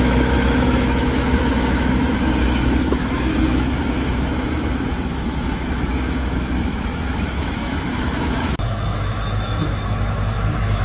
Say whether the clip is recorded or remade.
remade